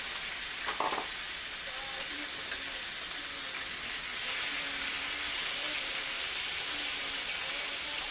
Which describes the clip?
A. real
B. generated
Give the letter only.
A